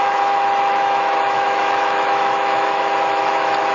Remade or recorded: remade